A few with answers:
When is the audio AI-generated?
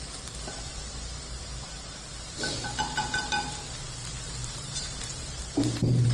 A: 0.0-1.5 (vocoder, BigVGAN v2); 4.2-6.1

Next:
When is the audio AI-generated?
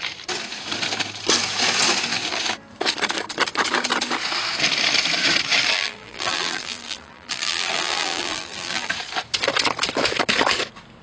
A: 5.7-8.9 (vocoder, BigVGAN v2)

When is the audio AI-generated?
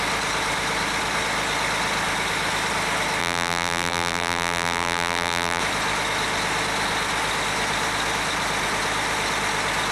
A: 3.2-5.6 (vocoder, BigVGAN v2)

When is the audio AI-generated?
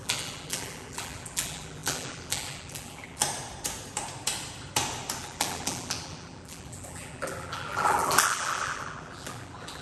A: 0.0-3.2 (vocoder, BigVGAN v2); 5.2-9.8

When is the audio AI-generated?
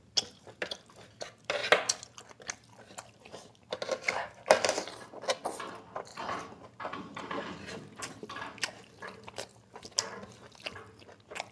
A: 6.1-8.3 (vocoder, BigVGAN v2)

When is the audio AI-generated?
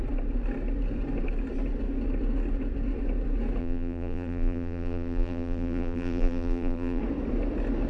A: 3.6-7.0 (vocoder, BigVGAN v2)